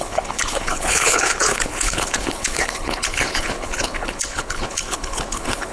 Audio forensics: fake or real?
fake